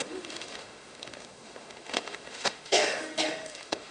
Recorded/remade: remade